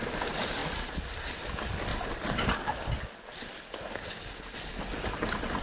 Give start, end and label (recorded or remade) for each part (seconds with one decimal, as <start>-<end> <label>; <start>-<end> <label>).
0.0-1.9 recorded; 1.9-2.5 remade; 2.5-5.6 recorded